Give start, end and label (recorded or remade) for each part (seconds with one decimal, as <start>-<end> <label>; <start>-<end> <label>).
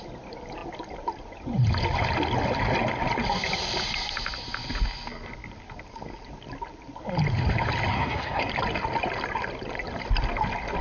0.0-7.9 recorded; 7.9-8.5 remade; 8.5-10.8 recorded